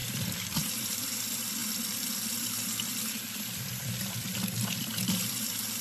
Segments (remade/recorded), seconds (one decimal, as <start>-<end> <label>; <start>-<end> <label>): 0.0-5.8 remade